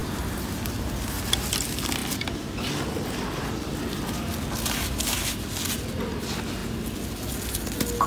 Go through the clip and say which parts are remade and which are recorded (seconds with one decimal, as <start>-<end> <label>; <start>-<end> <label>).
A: 0.0-0.9 remade; 0.9-8.1 recorded